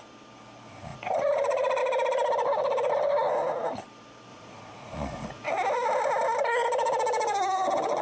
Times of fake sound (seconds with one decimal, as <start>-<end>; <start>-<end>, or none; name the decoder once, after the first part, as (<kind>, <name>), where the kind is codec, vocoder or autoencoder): 0.9-1.8 (vocoder, Vocos); 4.3-5.5